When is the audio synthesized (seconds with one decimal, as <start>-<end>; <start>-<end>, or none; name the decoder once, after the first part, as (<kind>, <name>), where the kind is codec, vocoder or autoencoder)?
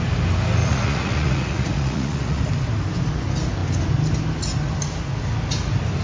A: 0.6-2.4 (vocoder, Vocos)